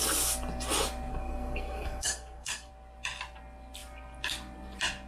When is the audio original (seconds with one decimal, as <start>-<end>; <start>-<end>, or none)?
0.0-1.1; 2.7-5.1